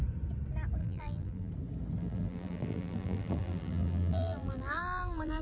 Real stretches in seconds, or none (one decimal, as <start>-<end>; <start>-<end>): 0.0-0.8; 1.5-2.0